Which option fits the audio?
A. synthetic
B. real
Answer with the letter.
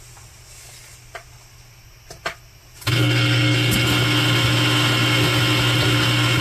B